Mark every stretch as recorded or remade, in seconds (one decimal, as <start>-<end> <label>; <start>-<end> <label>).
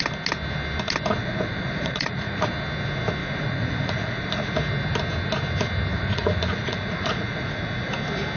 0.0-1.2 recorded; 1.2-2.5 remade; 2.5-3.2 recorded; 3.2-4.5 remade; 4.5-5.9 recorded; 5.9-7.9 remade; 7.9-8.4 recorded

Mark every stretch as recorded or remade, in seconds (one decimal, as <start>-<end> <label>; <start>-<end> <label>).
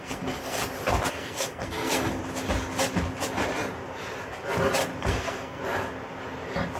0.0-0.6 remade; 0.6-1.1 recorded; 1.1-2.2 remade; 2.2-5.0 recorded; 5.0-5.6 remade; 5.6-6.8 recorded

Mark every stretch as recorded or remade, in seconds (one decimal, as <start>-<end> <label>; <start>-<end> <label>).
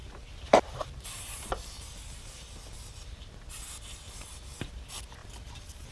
0.0-5.9 recorded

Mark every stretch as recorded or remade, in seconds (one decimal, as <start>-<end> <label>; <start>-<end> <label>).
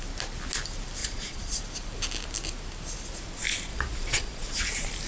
0.0-1.0 recorded; 1.0-1.6 remade; 1.6-3.7 recorded; 3.7-4.6 remade; 4.6-5.1 recorded